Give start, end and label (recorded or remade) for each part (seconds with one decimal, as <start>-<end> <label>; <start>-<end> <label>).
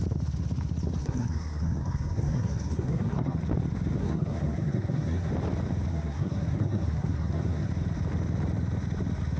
0.0-1.0 recorded; 1.0-3.4 remade; 3.4-4.0 recorded; 4.0-5.3 remade; 5.3-5.9 recorded; 5.9-7.7 remade; 7.7-9.4 recorded